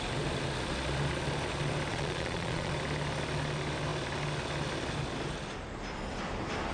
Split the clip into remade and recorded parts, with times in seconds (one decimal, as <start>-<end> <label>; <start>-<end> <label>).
0.0-1.9 recorded; 1.9-2.7 remade; 2.7-6.7 recorded